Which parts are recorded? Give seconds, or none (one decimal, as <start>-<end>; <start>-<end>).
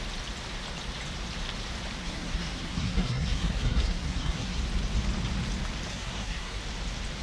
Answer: 0.0-2.0; 4.6-5.9; 6.6-7.2